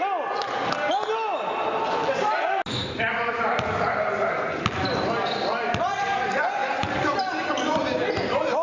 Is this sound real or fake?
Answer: real